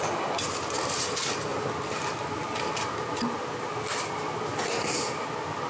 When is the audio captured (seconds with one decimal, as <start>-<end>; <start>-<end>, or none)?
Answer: 0.0-5.7